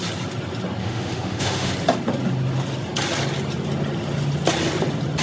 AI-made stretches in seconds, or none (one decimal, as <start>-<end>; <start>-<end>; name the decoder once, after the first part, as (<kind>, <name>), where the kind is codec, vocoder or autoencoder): 0.8-1.7 (autoencoder, DAC-VAE)